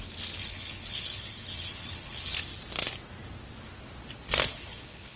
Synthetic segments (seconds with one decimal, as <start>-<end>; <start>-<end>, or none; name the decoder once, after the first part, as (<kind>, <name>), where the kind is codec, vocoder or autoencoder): 0.4-2.4 (codec, HILCodec); 4.5-5.2